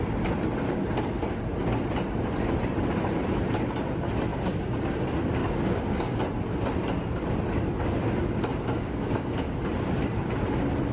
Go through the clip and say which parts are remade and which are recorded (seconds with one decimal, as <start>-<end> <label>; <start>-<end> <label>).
0.0-4.3 recorded; 4.3-4.8 remade; 4.8-5.4 recorded; 5.4-6.2 remade; 6.2-8.5 recorded; 8.5-9.4 remade; 9.4-10.9 recorded